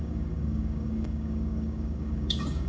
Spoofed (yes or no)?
yes